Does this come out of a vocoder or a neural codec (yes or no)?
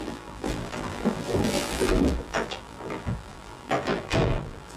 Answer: yes